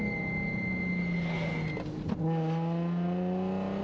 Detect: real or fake real